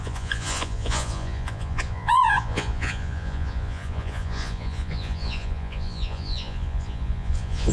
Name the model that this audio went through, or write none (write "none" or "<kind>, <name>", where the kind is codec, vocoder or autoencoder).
vocoder, Vocos